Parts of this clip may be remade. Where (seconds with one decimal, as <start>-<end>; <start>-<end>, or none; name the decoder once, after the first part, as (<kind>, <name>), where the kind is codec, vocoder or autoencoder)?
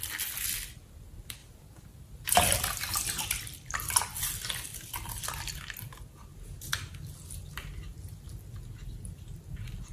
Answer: 1.4-3.4 (vocoder, BigVGAN v2)